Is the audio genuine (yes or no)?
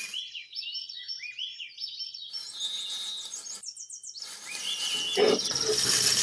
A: yes